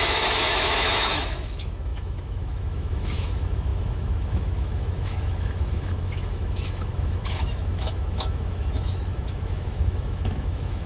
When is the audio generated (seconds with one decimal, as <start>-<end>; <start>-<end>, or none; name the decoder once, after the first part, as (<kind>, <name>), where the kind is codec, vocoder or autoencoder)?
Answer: 0.0-10.9 (autoencoder, DAC-VAE)